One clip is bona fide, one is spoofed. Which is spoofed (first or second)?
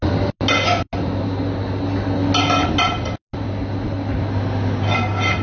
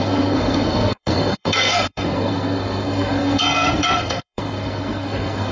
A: second